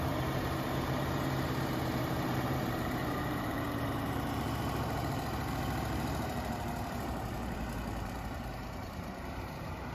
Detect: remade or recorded remade